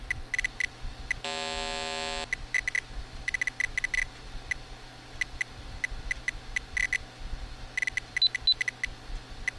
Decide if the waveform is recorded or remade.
recorded